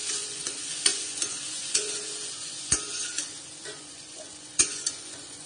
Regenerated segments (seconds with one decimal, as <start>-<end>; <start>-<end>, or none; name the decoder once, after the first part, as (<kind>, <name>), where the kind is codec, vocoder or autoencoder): 0.0-5.5 (vocoder, Vocos)